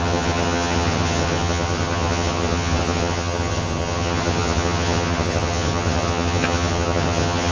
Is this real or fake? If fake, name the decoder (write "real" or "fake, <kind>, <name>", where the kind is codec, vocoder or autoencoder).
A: fake, vocoder, HiFi-GAN